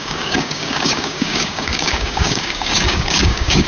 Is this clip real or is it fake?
fake